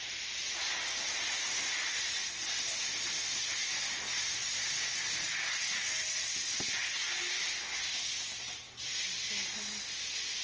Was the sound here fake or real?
real